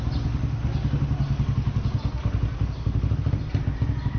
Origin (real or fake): real